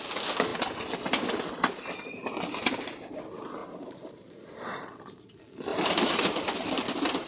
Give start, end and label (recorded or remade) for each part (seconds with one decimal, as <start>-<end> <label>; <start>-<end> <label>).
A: 0.0-3.6 recorded; 3.6-5.3 remade; 5.3-5.7 recorded; 5.7-6.7 remade; 6.7-7.3 recorded